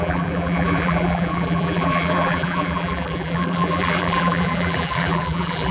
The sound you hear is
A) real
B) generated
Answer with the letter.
B